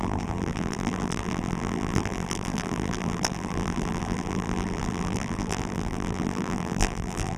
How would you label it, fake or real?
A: fake